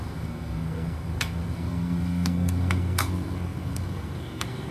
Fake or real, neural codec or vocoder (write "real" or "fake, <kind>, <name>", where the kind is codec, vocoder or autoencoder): fake, codec, SNAC